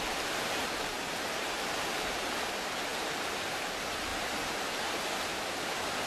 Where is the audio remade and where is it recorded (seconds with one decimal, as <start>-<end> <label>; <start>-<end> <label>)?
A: 0.0-0.6 remade; 0.6-1.9 recorded; 1.9-6.1 remade